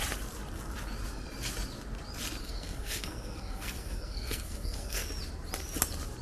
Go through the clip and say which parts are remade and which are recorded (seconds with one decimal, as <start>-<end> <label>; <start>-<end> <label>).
0.0-2.4 recorded; 2.4-5.1 remade; 5.1-6.2 recorded